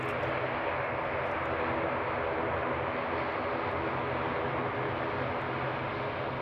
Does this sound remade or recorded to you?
recorded